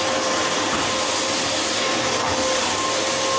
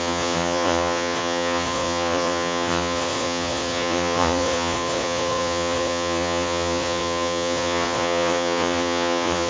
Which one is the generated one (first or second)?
second